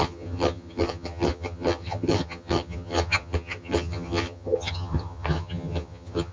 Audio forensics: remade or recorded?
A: remade